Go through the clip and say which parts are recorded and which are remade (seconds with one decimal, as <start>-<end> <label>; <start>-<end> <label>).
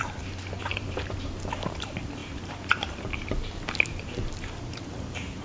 0.0-0.6 recorded; 0.6-5.4 remade